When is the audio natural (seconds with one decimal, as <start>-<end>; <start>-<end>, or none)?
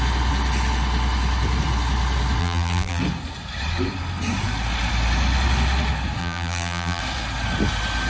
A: 0.0-2.4; 3.0-6.2; 7.0-8.1